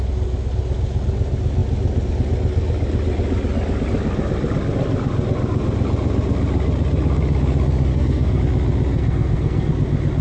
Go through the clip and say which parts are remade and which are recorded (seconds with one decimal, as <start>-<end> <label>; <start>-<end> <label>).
0.0-7.9 recorded; 7.9-8.4 remade; 8.4-8.9 recorded; 8.9-9.7 remade; 9.7-10.2 recorded

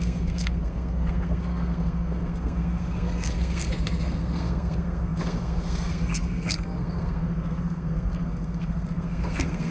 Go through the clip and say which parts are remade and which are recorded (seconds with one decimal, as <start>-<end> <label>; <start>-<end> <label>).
0.0-9.7 remade

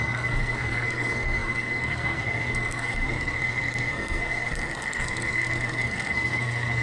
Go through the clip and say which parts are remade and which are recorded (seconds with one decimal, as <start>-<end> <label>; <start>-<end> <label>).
0.0-6.8 remade

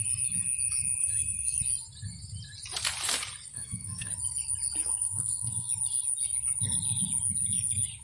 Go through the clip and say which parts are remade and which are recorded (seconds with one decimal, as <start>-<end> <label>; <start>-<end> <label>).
0.0-1.0 recorded; 1.0-1.6 remade; 1.6-3.5 recorded; 3.5-4.1 remade; 4.1-4.8 recorded; 4.8-5.7 remade; 5.7-8.0 recorded

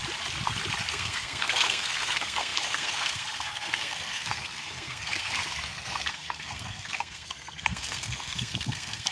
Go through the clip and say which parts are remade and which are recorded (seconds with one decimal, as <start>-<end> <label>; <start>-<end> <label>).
0.0-0.9 recorded; 0.9-9.1 remade